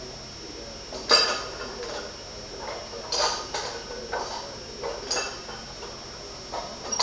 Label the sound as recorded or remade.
recorded